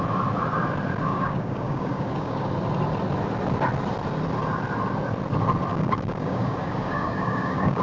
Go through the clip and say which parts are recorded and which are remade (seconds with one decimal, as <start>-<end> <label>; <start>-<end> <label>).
0.0-1.1 recorded; 1.1-2.5 remade; 2.5-5.7 recorded; 5.7-7.8 remade